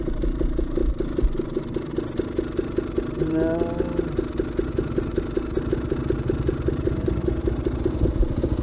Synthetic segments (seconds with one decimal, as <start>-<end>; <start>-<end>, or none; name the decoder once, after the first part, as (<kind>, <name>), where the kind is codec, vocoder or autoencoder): none